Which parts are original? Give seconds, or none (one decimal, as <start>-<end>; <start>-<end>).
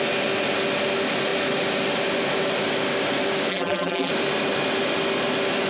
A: 0.0-3.5; 4.1-5.7